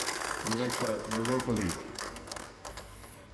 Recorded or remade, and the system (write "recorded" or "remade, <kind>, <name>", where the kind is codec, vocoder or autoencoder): remade, codec, SNAC